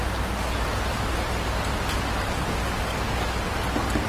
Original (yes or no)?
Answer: yes